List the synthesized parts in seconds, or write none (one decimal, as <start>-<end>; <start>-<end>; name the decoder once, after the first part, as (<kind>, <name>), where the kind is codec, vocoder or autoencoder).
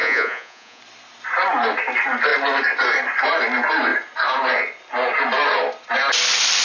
0.0-0.8 (vocoder, Vocos)